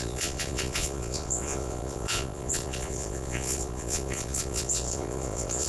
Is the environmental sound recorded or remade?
remade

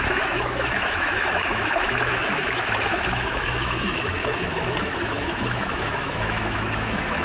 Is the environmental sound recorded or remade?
remade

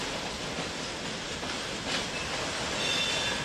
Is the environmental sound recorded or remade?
recorded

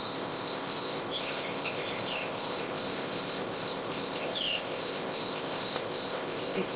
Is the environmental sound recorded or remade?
remade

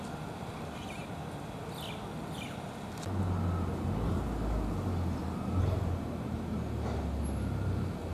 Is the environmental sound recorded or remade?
recorded